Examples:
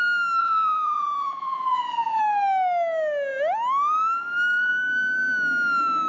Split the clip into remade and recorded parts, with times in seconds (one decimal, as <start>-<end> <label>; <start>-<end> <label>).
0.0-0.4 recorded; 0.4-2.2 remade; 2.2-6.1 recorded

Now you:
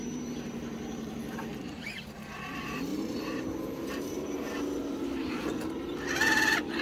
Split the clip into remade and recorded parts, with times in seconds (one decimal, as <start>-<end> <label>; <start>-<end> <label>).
0.0-1.2 remade; 1.2-6.8 recorded

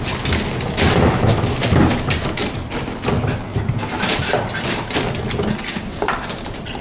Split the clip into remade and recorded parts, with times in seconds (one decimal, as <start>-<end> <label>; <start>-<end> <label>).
0.0-3.5 recorded; 3.5-5.3 remade; 5.3-5.9 recorded; 5.9-6.8 remade